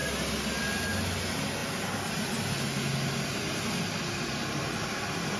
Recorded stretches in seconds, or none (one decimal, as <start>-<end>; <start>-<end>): 0.0-5.4